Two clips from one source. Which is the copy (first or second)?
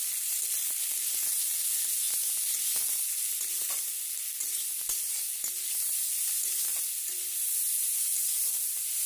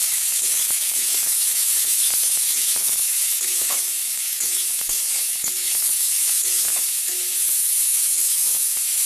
second